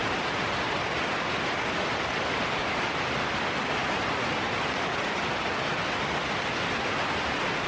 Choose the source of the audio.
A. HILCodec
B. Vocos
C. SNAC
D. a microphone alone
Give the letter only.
D